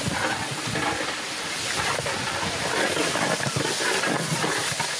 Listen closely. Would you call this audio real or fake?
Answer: real